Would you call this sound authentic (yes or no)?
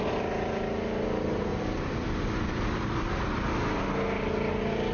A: yes